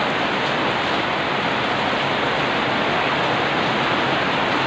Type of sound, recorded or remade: recorded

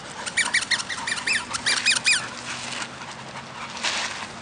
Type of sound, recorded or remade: recorded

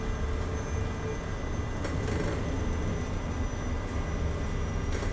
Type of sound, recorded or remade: recorded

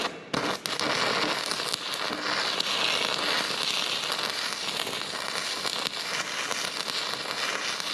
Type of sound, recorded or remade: recorded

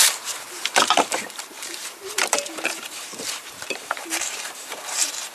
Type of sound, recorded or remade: remade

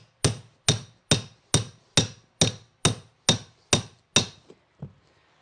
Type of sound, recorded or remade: recorded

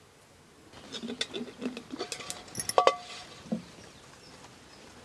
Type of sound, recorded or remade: recorded